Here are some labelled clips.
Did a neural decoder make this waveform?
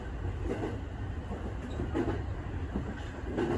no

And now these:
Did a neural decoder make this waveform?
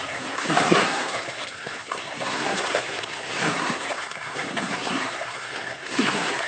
yes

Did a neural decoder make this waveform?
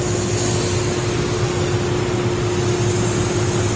no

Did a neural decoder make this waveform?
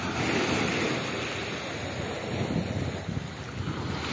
no